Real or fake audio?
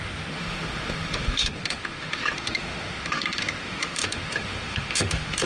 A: fake